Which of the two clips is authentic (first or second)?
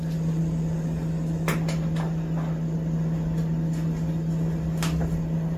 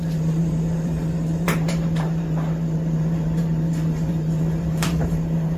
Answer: first